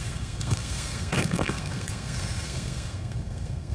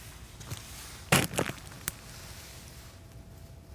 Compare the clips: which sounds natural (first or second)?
second